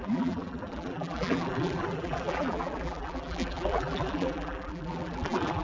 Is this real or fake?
fake